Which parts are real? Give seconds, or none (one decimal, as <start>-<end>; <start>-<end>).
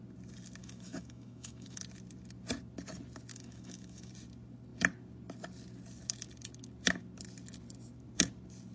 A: 0.0-0.6; 1.8-3.3; 4.1-8.7